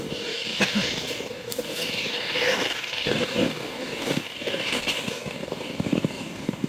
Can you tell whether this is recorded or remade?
remade